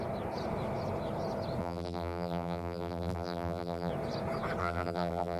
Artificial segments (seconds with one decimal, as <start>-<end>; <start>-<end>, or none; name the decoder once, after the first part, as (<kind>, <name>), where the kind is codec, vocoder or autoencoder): 1.6-3.9 (vocoder, BigVGAN v2); 4.6-5.4